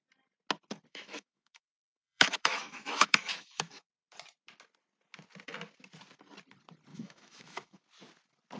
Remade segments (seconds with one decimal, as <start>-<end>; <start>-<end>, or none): 0.9-3.9; 6.9-7.8